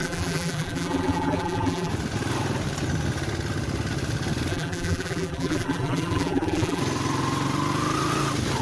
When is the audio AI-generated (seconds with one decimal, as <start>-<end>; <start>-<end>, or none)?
0.0-1.9; 4.5-6.8